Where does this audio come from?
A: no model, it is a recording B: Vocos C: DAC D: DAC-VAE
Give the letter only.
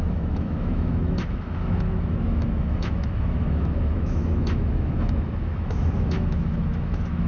D